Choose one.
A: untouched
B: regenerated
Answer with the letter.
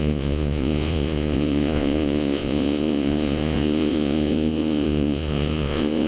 B